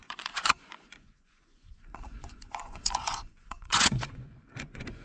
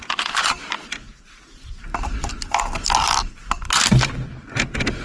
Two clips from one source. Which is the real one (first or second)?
second